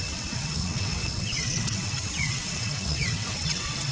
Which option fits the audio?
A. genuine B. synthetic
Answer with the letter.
B